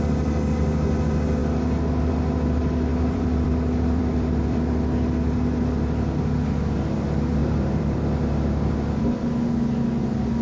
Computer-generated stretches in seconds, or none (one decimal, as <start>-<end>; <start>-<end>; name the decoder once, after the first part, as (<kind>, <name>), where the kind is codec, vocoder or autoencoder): 2.9-4.6 (vocoder, BigVGAN v2); 7.4-8.0